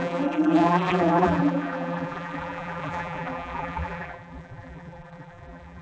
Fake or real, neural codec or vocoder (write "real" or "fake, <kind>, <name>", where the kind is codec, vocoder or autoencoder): fake, vocoder, BigVGAN v2